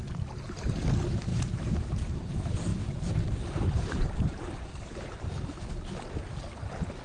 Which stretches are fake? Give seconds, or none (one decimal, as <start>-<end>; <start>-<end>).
1.3-2.2; 2.7-4.8